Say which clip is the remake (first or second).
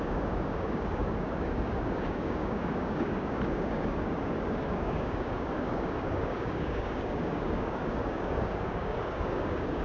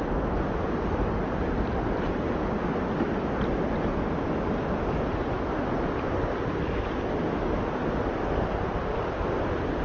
first